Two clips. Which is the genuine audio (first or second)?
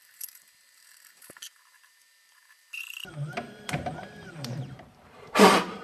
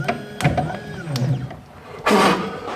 second